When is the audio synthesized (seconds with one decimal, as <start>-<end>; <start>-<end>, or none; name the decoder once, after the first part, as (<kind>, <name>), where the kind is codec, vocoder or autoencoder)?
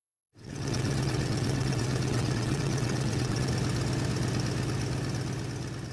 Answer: 0.0-3.5 (vocoder, WaveNeXt)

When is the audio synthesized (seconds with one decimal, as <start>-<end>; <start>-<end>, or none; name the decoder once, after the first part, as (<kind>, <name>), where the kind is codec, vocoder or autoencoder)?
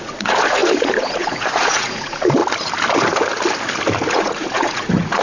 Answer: 0.0-2.4 (vocoder, Vocos); 4.1-5.2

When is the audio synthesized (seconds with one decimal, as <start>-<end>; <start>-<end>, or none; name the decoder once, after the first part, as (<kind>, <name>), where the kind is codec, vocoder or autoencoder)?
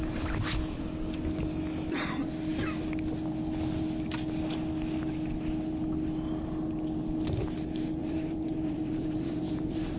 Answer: 8.0-10.0 (vocoder, BigVGAN v2)